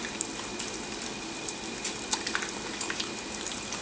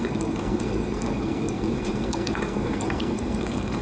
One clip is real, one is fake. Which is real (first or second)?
first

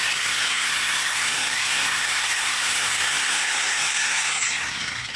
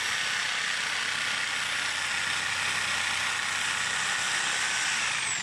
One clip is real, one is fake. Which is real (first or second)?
second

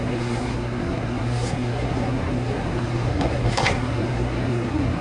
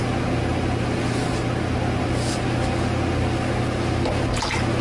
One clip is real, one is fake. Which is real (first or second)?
second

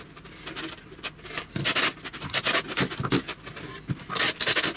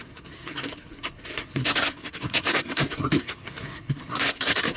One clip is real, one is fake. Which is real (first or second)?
first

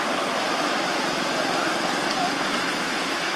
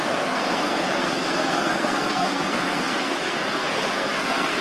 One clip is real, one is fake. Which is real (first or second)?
first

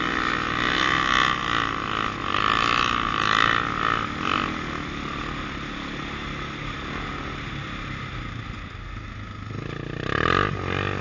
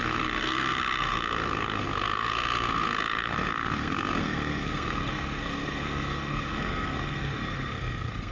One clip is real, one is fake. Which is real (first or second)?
first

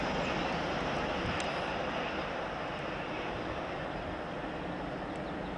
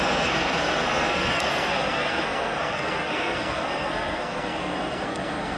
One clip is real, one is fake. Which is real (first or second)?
first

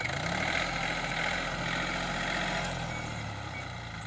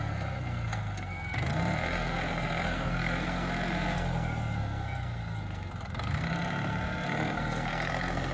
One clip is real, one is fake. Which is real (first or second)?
first